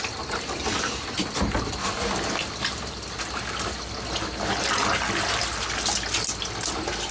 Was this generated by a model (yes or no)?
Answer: no